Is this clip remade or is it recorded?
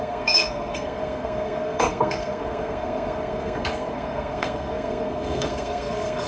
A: remade